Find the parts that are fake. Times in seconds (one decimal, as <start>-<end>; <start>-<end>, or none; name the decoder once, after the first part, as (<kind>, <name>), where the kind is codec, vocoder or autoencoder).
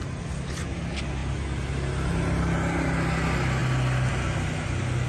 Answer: none